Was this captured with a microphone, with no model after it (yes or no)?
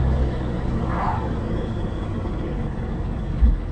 no